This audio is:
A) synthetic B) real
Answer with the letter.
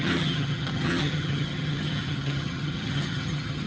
A